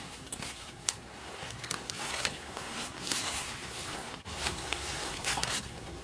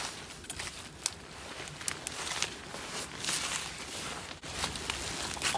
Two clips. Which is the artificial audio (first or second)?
first